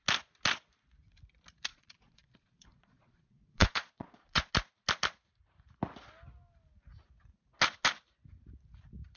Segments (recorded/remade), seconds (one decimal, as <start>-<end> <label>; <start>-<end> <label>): 0.0-1.7 recorded; 1.7-4.5 remade; 4.5-9.2 recorded